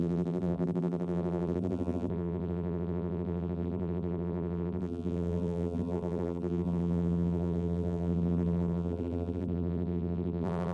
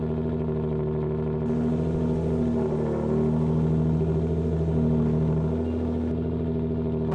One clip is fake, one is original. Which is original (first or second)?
second